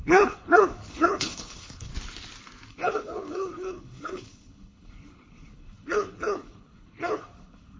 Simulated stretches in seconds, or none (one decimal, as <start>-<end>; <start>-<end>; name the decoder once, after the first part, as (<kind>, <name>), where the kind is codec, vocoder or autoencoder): 0.0-1.9 (codec, HILCodec); 2.7-7.8

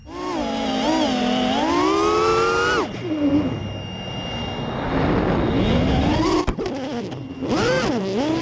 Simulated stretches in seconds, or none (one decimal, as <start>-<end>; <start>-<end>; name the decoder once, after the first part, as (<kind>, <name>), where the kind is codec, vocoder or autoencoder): none

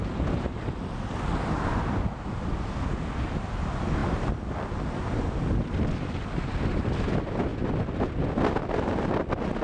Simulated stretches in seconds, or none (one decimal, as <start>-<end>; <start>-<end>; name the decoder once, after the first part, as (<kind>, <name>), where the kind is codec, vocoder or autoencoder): none

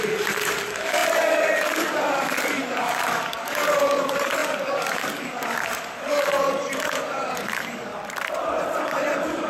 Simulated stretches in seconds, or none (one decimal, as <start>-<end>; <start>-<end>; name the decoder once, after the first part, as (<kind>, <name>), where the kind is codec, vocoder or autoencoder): 0.0-7.9 (codec, DAC); 8.8-9.5

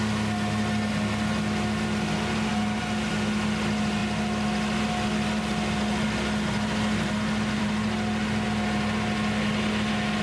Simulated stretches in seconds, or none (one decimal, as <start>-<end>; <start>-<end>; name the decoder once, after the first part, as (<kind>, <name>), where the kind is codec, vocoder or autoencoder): none

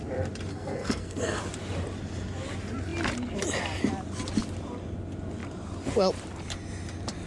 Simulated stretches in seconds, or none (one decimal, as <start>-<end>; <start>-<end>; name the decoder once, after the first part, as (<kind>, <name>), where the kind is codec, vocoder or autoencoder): 0.5-1.4 (codec, SNAC)